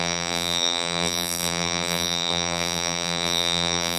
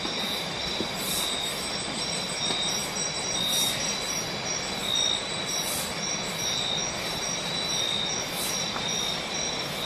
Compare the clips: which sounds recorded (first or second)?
second